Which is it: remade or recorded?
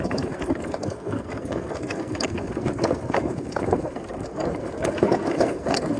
remade